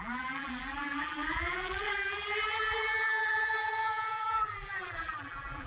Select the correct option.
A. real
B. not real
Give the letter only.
B